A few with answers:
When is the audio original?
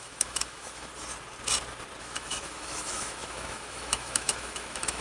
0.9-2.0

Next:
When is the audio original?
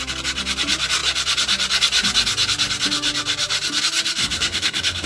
0.0-4.2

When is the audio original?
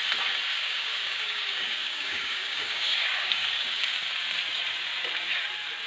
0.0-0.5; 4.0-5.9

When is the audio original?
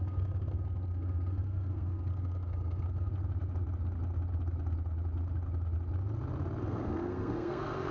3.1-6.6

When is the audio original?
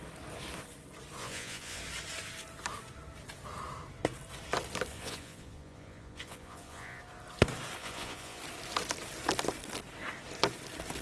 0.0-1.2; 1.8-4.9; 7.0-7.8; 8.4-11.0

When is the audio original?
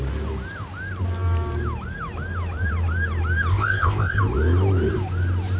0.0-3.5; 4.2-5.6